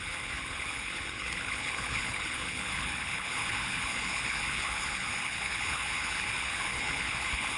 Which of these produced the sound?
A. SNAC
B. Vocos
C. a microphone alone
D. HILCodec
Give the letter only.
D